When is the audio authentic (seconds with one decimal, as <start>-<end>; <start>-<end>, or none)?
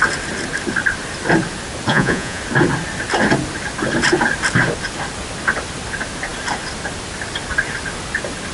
0.0-1.9; 2.4-8.5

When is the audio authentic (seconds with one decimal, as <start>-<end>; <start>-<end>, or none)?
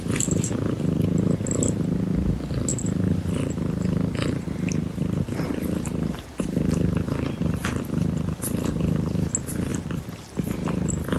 0.0-11.2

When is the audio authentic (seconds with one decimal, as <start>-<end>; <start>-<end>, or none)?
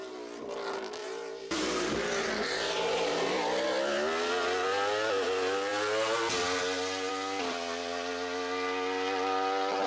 0.0-1.0; 3.3-9.9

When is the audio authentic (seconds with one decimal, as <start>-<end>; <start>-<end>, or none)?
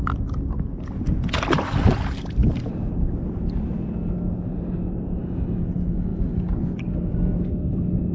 0.0-8.1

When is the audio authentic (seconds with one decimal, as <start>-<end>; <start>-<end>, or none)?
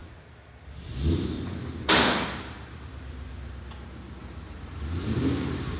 3.5-4.2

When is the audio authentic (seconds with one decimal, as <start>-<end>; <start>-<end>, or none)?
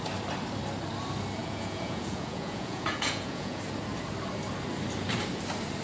0.0-1.4; 3.6-5.8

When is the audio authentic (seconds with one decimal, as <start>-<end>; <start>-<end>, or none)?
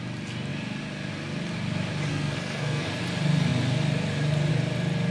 0.0-2.1; 3.0-5.1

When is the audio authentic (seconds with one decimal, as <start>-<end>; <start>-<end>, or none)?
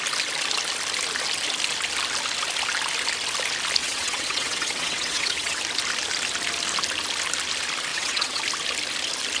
0.0-3.8; 5.6-7.9; 8.4-9.4